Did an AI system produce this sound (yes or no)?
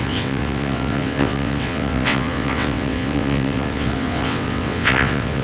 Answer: yes